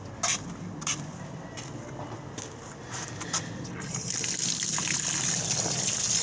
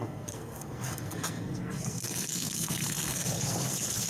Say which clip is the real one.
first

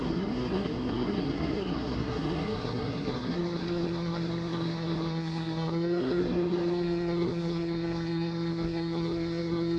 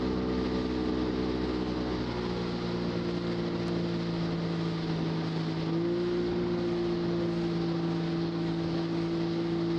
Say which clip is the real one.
second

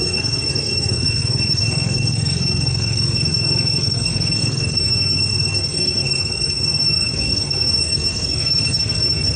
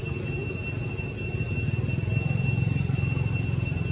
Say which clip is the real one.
second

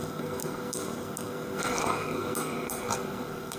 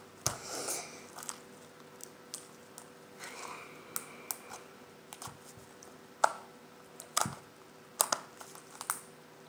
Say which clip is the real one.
second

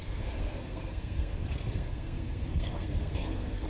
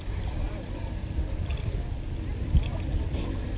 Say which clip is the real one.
second